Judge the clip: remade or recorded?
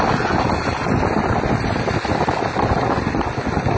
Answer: recorded